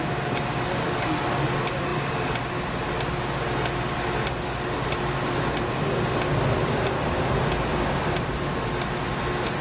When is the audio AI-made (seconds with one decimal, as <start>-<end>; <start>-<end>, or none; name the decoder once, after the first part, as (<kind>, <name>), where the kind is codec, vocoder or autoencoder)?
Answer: none